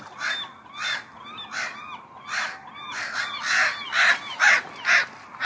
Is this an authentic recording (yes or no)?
yes